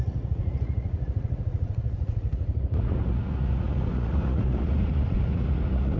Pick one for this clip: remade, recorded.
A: remade